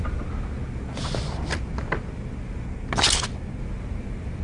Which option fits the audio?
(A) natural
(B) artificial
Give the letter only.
A